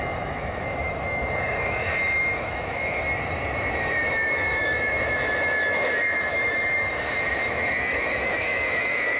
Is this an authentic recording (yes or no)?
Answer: no